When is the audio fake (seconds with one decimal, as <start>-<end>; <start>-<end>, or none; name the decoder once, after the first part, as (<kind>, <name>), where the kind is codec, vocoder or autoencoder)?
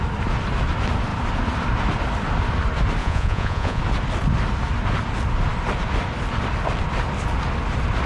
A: 3.0-3.8 (vocoder, Vocos)